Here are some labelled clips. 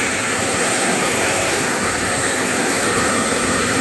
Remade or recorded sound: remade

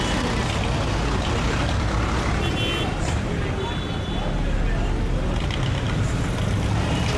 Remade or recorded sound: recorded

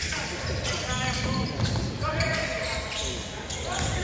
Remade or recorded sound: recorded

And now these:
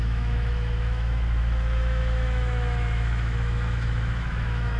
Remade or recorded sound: remade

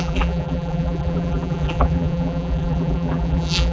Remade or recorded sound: remade